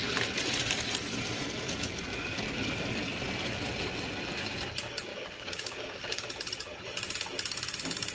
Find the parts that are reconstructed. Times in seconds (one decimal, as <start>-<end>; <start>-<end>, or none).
5.1-6.3